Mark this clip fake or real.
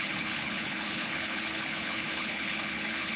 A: fake